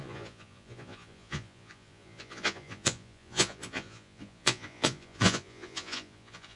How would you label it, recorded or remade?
remade